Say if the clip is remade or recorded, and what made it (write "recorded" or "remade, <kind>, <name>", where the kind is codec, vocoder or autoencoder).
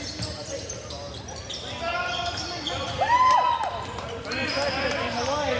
recorded